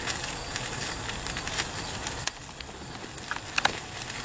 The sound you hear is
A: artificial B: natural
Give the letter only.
B